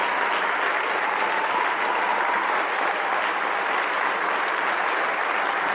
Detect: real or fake real